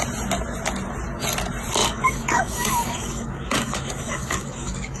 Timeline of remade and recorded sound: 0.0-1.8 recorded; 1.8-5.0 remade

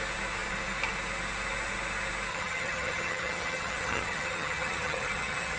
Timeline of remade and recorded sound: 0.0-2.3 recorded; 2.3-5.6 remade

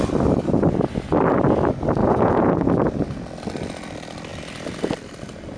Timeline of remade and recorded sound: 0.0-2.0 recorded; 2.0-2.7 remade; 2.7-5.6 recorded

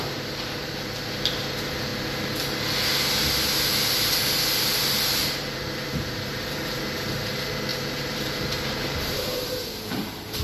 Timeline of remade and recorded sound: 0.0-1.9 remade; 1.9-4.6 recorded; 4.6-10.4 remade

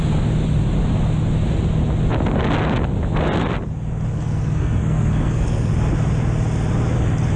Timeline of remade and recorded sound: 0.0-4.1 recorded; 4.1-5.7 remade; 5.7-7.4 recorded